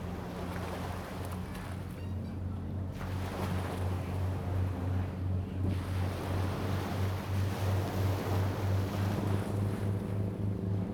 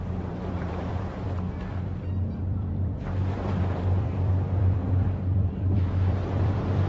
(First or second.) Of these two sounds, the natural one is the first